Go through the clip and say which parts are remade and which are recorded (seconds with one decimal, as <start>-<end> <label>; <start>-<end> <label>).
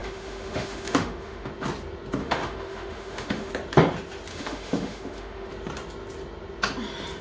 0.0-1.5 remade; 1.5-2.2 recorded; 2.2-3.5 remade; 3.5-4.3 recorded; 4.3-5.5 remade; 5.5-7.2 recorded